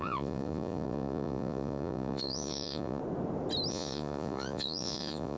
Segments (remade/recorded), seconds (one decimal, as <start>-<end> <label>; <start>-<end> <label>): 0.0-3.0 remade; 3.0-3.7 recorded; 3.7-5.4 remade